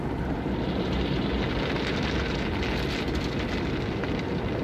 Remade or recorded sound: recorded